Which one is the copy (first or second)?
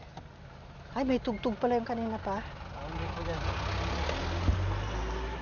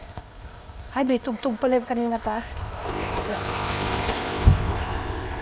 second